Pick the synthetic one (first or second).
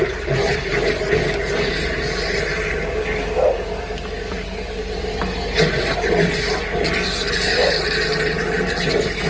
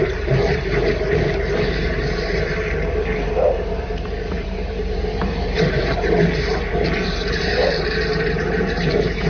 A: second